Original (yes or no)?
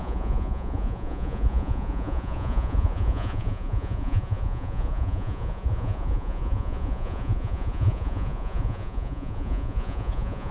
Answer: no